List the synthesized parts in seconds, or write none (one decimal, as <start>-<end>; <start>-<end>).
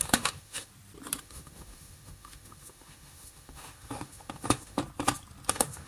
0.0-0.7; 1.2-4.8; 5.5-5.9